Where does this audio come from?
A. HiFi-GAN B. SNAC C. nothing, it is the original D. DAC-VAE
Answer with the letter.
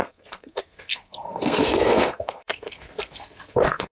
B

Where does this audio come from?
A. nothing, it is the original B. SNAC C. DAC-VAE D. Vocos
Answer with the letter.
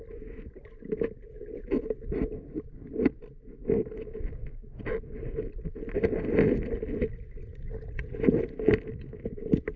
A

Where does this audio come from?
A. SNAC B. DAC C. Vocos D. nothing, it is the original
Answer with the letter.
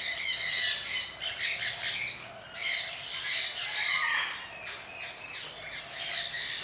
D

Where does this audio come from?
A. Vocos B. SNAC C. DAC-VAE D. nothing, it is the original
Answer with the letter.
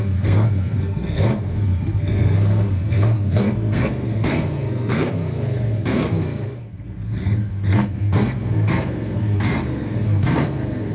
B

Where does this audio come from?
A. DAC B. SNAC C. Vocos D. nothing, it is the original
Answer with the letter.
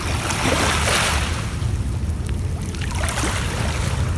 D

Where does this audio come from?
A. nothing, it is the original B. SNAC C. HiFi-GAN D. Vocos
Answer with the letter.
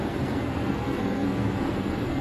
B